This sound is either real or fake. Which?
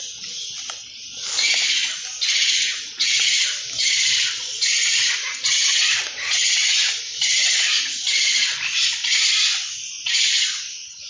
real